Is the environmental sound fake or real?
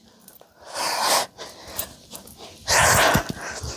real